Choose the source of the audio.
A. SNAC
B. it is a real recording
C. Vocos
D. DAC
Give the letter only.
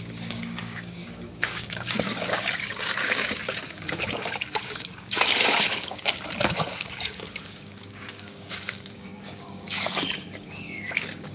D